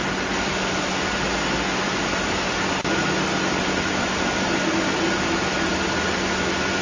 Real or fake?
real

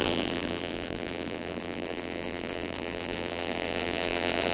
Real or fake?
fake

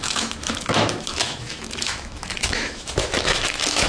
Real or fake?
fake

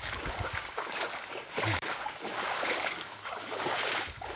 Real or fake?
fake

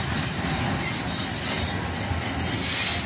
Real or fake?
real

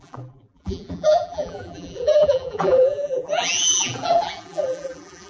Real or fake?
fake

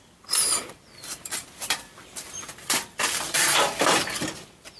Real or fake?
fake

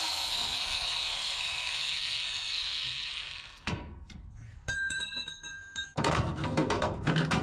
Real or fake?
fake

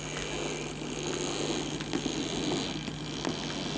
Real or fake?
real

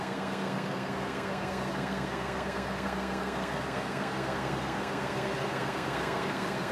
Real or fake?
fake